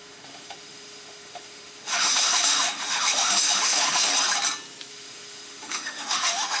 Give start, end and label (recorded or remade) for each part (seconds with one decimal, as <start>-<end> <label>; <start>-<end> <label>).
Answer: 0.0-4.1 remade; 4.1-4.9 recorded; 4.9-6.6 remade

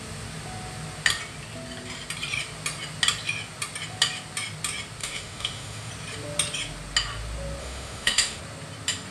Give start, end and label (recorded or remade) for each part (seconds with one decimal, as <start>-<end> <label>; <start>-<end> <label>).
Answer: 0.0-5.0 recorded; 5.0-5.9 remade; 5.9-7.6 recorded; 7.6-8.4 remade; 8.4-9.1 recorded